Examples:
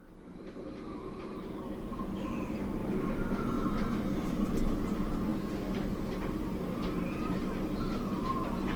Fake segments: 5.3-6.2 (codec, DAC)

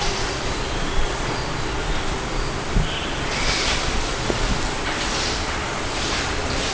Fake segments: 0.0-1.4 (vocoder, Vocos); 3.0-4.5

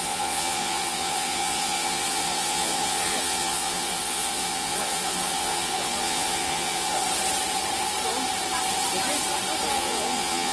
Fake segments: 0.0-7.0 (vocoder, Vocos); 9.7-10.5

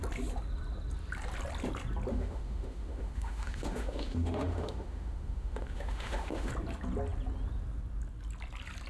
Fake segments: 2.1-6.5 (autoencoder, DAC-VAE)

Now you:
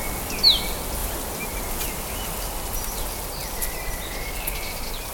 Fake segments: 1.0-1.6 (vocoder, BigVGAN v2); 3.4-5.1

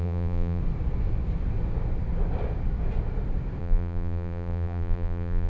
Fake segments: 0.0-0.6 (vocoder, BigVGAN v2); 3.6-5.5

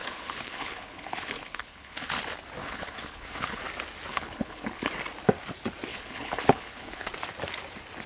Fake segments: 0.0-2.2 (codec, HILCodec); 2.6-3.6; 4.1-4.9; 5.9-7.1